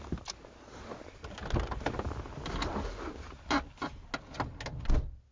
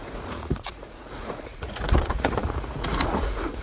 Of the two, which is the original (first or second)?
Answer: first